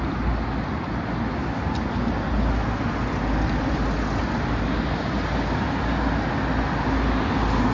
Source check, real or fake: real